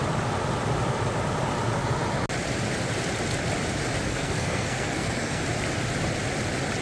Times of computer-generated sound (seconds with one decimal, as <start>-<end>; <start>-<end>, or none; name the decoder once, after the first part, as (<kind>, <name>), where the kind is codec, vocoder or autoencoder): 4.1-5.4 (codec, SNAC)